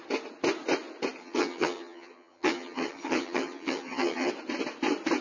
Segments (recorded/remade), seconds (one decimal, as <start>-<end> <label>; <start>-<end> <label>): 0.0-1.2 recorded; 1.2-4.3 remade; 4.3-5.2 recorded